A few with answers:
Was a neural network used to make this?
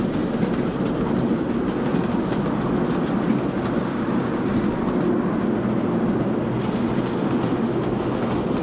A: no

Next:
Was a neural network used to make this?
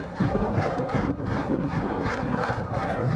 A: yes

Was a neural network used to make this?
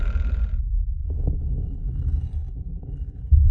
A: no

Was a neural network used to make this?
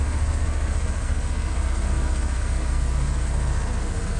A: yes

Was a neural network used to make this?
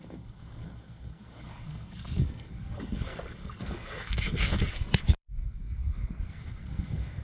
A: yes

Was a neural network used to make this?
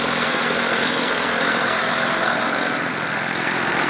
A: yes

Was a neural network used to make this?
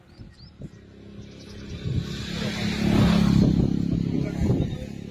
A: no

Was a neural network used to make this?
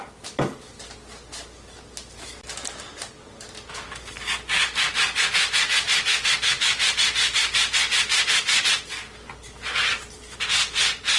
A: no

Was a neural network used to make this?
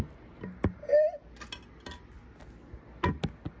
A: no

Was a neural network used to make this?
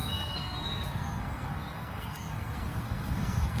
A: yes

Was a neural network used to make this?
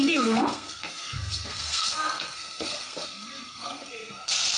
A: yes